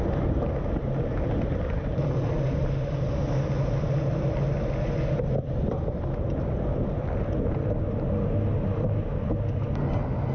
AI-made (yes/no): no